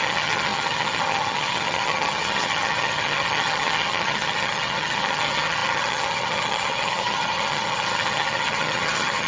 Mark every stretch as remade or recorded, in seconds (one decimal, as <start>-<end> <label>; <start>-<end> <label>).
0.0-9.3 remade